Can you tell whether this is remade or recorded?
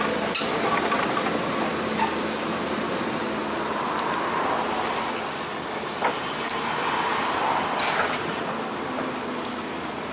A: recorded